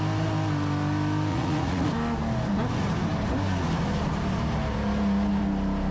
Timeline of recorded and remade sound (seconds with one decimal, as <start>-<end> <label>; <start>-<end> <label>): 0.0-1.3 recorded; 1.3-1.9 remade; 1.9-5.9 recorded